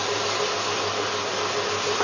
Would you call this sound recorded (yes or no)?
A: yes